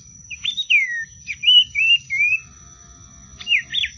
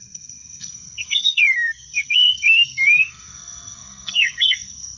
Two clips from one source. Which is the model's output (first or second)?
second